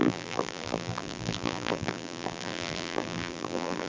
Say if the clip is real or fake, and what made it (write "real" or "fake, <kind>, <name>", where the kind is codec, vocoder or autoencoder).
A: fake, vocoder, BigVGAN v2